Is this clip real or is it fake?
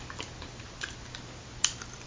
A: real